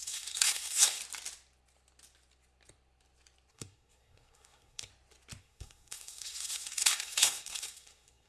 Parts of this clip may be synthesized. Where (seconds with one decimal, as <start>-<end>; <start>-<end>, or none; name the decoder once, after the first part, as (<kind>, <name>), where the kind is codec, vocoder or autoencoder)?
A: 0.0-1.0 (codec, SNAC); 3.5-4.9; 5.4-8.3